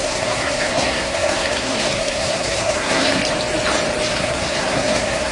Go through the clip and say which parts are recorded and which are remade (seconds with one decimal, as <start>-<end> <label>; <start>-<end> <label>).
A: 0.0-3.2 remade; 3.2-4.1 recorded; 4.1-5.3 remade